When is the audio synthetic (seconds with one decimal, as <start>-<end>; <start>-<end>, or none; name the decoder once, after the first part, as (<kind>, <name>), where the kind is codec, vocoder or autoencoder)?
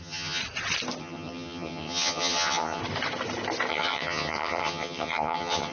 0.0-0.4 (vocoder, HiFi-GAN); 1.0-2.8; 3.7-5.7